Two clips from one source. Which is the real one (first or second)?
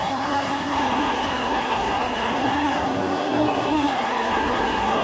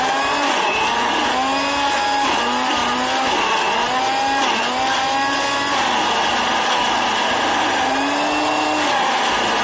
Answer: second